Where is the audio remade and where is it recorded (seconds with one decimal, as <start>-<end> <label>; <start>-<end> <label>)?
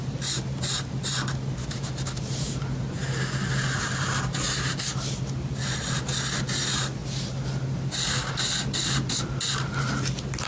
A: 0.0-1.6 recorded; 1.6-2.2 remade; 2.2-10.5 recorded